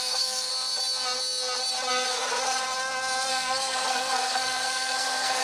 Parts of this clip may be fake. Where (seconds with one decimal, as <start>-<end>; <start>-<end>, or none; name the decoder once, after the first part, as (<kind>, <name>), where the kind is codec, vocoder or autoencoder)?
0.0-0.5 (codec, SNAC); 1.9-2.3; 3.3-5.4